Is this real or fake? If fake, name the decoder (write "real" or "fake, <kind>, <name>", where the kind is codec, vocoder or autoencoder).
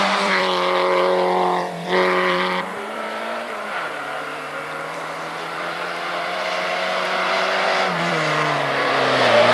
fake, vocoder, BigVGAN v2